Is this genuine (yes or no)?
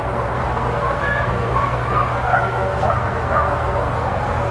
no